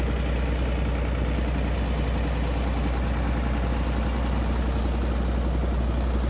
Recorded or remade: recorded